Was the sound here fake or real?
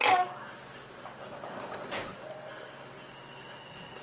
real